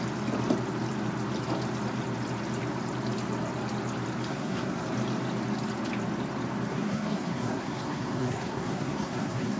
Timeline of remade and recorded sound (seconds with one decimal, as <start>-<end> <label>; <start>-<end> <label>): 0.0-4.3 recorded; 4.3-4.8 remade; 4.8-6.7 recorded; 6.7-9.6 remade